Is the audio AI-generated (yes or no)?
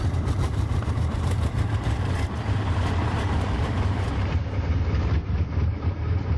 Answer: yes